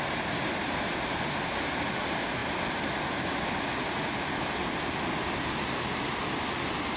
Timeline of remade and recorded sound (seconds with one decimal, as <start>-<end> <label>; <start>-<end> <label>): 0.0-7.0 recorded